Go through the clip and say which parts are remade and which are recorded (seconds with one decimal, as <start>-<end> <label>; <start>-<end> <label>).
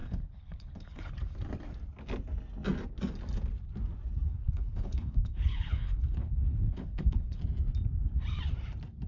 0.0-1.1 remade; 1.1-4.3 recorded; 4.3-7.4 remade; 7.4-9.1 recorded